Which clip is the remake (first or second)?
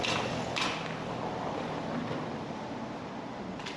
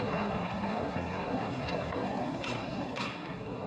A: second